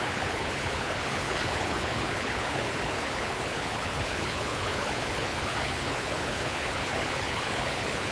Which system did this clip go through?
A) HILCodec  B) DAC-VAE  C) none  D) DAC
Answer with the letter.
A